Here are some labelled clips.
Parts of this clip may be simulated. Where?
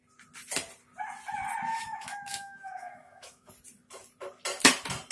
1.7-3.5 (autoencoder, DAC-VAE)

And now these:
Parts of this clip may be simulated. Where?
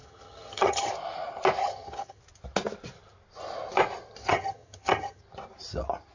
0.0-0.9 (vocoder, HiFi-GAN); 1.6-2.2; 4.2-5.2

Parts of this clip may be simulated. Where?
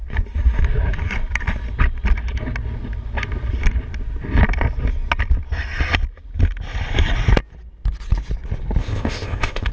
8.8-9.7 (codec, ZipCodec)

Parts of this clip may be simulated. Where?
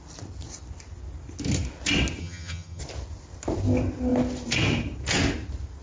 2.2-2.8 (vocoder, HiFi-GAN)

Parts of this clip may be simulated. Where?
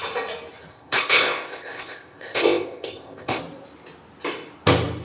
0.7-3.4 (codec, ZipCodec)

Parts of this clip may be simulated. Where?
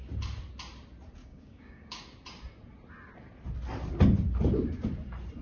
1.2-2.0 (codec, DAC)